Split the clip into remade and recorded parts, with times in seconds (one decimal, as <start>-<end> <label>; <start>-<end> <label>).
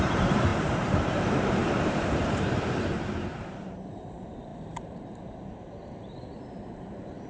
0.0-7.3 remade